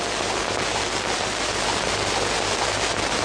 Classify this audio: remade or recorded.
recorded